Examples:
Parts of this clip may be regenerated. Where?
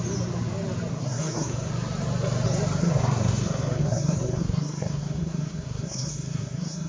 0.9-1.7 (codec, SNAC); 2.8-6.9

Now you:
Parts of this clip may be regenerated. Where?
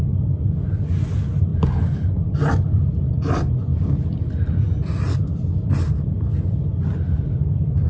0.0-7.9 (vocoder, BigVGAN v2)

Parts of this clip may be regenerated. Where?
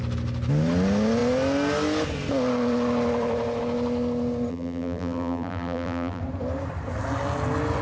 4.5-6.2 (vocoder, BigVGAN v2)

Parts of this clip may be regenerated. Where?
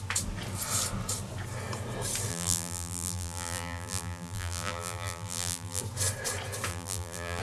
2.3-5.8 (vocoder, BigVGAN v2); 6.7-7.4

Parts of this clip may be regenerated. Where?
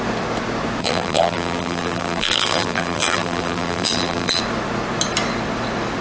0.8-4.4 (vocoder, BigVGAN v2)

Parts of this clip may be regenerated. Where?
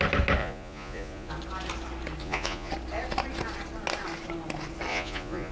0.4-1.3 (vocoder, Vocos); 2.2-2.7; 4.9-5.5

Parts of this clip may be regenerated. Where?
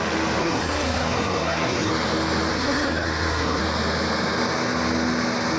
0.4-1.9 (codec, SNAC); 2.5-3.6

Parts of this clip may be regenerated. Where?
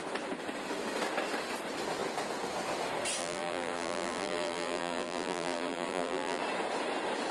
3.2-6.4 (vocoder, BigVGAN v2)